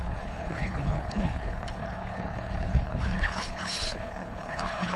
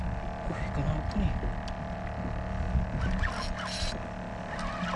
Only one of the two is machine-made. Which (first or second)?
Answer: first